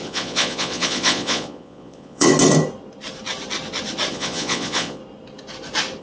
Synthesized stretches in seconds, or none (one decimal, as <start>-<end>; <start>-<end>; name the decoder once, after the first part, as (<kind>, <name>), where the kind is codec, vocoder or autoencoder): 0.0-2.3 (vocoder, Vocos); 4.1-5.0